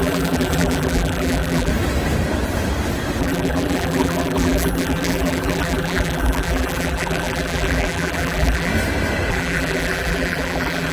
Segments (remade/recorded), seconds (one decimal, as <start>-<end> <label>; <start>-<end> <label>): 0.0-1.7 remade; 1.7-3.2 recorded; 3.2-8.7 remade; 8.7-9.3 recorded; 9.3-10.9 remade